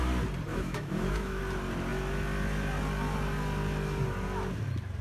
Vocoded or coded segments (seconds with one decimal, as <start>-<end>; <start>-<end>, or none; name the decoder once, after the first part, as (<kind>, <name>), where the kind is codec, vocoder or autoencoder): 0.5-1.4 (autoencoder, DAC-VAE)